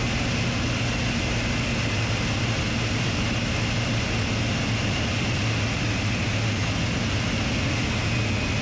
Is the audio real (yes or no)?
yes